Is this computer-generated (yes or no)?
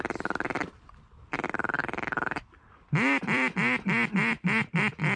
yes